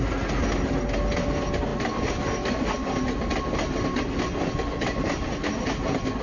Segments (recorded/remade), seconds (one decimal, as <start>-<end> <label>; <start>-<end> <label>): 0.0-6.2 recorded